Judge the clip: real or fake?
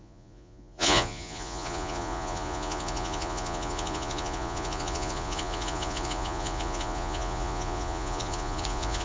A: fake